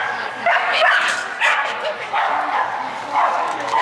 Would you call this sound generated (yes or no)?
yes